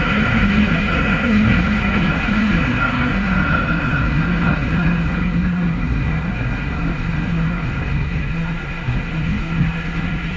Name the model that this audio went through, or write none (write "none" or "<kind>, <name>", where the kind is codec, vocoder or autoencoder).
codec, SNAC